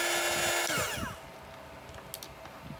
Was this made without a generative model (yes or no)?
yes